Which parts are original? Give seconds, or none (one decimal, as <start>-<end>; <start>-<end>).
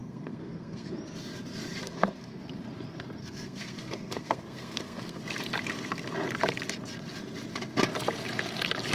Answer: 0.9-1.8; 2.4-3.2; 5.2-8.9